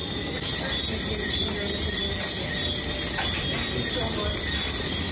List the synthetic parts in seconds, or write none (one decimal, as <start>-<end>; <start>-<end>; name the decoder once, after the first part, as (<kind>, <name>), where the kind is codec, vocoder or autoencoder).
none